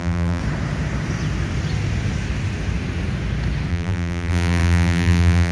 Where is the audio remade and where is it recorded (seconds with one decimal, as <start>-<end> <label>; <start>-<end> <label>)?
0.0-0.4 remade; 0.4-3.7 recorded; 3.7-5.5 remade